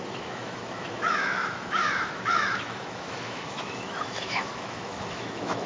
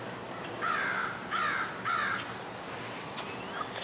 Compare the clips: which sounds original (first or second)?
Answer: second